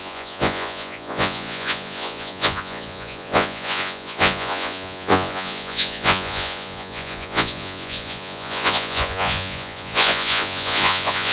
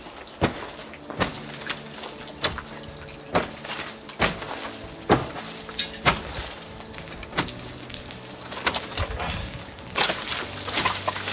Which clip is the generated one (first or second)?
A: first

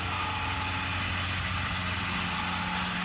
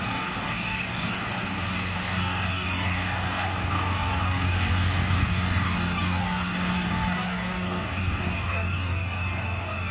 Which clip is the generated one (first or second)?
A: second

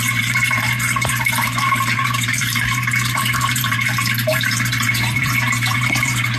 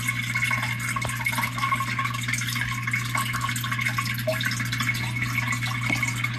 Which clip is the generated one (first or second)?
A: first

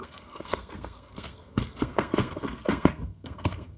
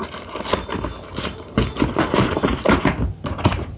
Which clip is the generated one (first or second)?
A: first